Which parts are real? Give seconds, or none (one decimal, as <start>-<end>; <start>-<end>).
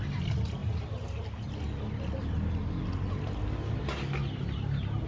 0.0-5.1